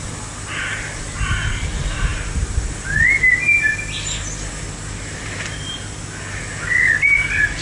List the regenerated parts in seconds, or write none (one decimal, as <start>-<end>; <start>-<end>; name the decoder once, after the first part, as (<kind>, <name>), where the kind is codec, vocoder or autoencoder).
none